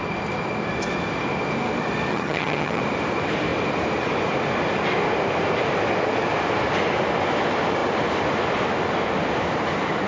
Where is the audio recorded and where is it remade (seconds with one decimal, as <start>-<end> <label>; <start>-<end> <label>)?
0.0-2.1 recorded; 2.1-2.8 remade; 2.8-10.1 recorded